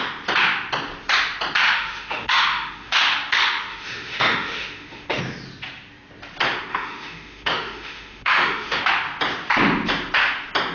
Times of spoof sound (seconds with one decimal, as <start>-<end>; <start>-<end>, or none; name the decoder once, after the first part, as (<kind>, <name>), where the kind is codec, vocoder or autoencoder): 1.6-3.0 (autoencoder, DAC-VAE); 3.7-5.2; 6.7-8.9